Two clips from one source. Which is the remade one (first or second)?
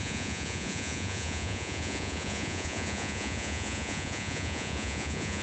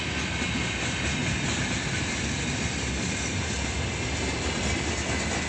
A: first